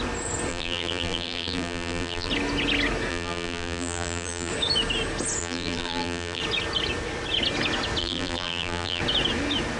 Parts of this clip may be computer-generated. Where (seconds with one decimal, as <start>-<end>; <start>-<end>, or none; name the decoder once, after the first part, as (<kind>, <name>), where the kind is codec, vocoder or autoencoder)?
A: 0.5-2.3 (vocoder, BigVGAN v2); 3.1-4.5; 5.4-6.4; 8.0-9.0